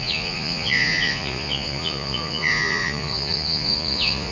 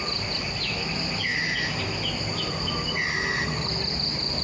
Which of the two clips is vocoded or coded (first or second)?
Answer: first